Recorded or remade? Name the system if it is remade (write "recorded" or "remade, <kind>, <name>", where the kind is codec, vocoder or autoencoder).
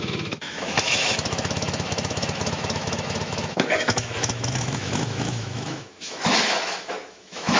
remade, autoencoder, DAC-VAE